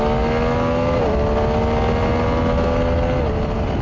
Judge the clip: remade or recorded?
recorded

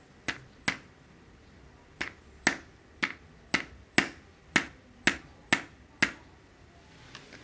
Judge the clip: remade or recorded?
recorded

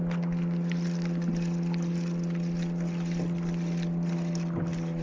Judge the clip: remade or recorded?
recorded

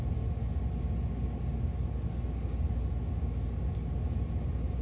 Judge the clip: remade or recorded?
recorded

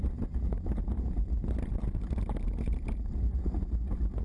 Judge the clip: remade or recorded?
remade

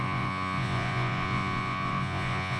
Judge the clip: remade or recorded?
remade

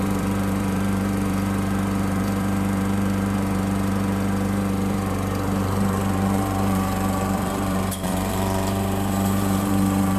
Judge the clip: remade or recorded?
remade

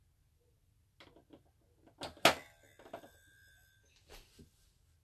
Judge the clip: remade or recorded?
recorded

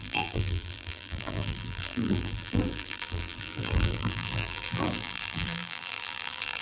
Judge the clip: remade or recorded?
remade